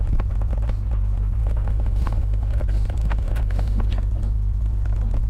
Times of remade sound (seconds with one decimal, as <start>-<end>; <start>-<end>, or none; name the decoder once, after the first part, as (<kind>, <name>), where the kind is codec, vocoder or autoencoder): 1.4-2.6 (autoencoder, DAC-VAE); 3.0-3.8